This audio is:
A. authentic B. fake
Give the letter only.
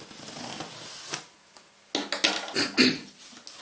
A